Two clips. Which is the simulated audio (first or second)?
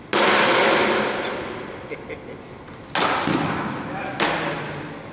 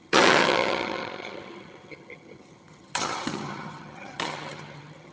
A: second